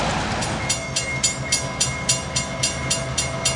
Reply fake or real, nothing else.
real